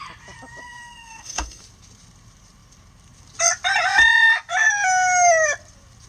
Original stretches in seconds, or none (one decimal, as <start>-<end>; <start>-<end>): 0.0-0.6; 1.6-6.1